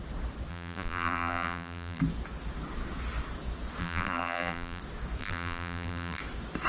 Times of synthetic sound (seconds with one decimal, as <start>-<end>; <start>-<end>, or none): 0.5-2.0; 3.8-4.8; 5.2-6.2

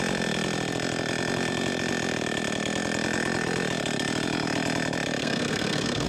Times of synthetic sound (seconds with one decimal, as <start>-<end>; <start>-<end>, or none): 5.2-6.1